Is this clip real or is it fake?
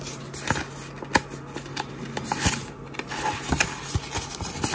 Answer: real